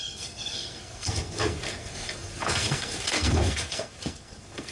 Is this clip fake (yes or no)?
yes